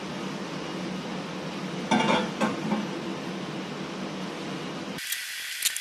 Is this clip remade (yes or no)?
no